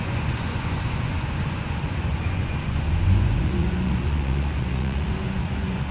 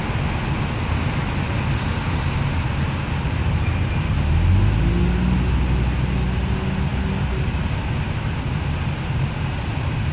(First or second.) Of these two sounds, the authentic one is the second